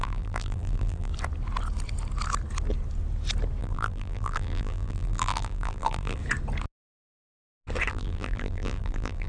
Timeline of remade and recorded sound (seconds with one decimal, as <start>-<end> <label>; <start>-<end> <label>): 0.0-1.1 remade; 1.1-3.6 recorded; 3.6-6.2 remade; 6.2-7.9 recorded; 7.9-9.3 remade